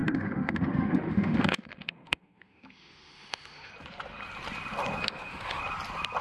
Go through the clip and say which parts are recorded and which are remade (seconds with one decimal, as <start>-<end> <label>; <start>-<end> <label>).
0.0-3.7 remade; 3.7-5.0 recorded; 5.0-5.6 remade; 5.6-6.2 recorded